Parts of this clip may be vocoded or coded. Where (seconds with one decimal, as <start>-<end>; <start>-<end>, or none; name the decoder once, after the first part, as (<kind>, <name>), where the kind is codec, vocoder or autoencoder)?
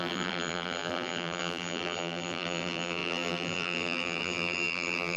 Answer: 0.0-5.2 (vocoder, BigVGAN v2)